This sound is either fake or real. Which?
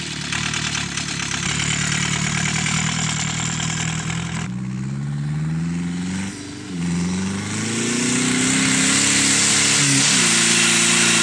real